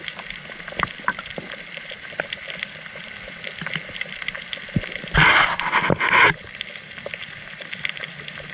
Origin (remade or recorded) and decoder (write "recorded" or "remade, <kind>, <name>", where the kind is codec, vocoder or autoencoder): recorded